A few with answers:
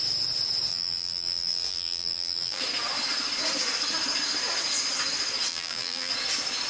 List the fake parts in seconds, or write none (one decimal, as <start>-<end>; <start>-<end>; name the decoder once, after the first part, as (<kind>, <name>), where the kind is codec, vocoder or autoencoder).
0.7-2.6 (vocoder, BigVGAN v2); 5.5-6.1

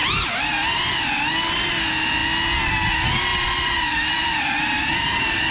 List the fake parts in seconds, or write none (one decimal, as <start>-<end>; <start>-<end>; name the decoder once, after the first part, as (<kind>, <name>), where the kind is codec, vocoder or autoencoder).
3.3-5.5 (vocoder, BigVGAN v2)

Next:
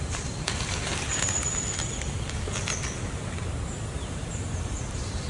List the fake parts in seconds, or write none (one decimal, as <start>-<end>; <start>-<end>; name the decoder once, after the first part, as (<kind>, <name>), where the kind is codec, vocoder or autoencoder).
0.0-0.9 (vocoder, BigVGAN v2); 4.1-5.3

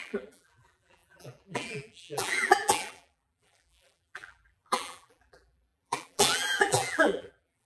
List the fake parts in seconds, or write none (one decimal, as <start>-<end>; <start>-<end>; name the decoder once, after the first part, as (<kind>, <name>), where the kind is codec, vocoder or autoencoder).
0.0-7.7 (vocoder, BigVGAN v2)